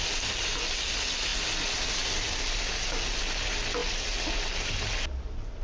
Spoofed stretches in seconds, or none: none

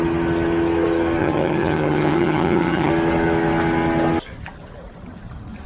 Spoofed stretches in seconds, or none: 1.2-2.9 (vocoder, HiFi-GAN)

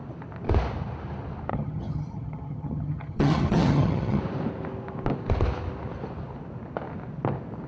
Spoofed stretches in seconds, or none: 1.5-4.2 (vocoder, HiFi-GAN)

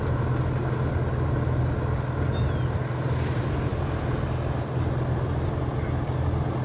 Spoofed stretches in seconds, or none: none